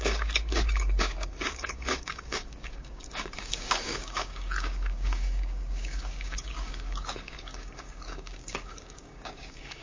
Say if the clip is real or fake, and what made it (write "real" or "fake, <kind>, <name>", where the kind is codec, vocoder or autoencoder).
fake, codec, DAC